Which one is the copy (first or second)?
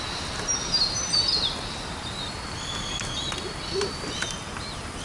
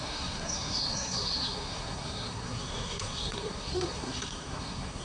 second